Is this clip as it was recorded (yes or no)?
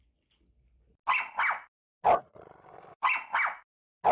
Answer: yes